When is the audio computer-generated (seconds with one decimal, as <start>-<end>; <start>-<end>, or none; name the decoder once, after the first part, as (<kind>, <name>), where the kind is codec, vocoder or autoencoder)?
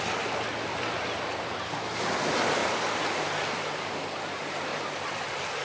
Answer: 0.7-1.6 (vocoder, BigVGAN v2); 2.6-3.2; 4.7-5.6